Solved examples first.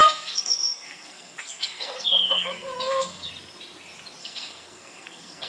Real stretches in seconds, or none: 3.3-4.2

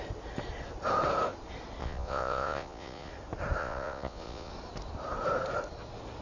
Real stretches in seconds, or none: 0.0-1.8; 3.1-3.6; 4.5-6.2

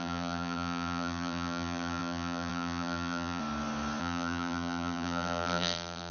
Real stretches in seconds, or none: 3.4-4.0

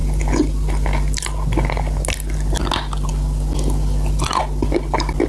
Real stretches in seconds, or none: 0.0-5.3